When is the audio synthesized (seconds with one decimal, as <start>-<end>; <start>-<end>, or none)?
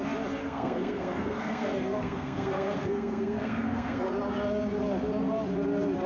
0.4-4.1